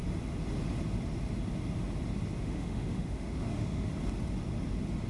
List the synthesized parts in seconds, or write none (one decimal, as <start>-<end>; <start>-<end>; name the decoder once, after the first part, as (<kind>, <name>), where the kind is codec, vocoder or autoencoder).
2.4-3.9 (autoencoder, DAC-VAE)